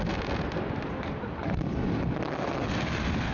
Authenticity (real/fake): real